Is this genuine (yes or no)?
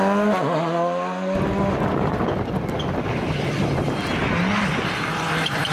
yes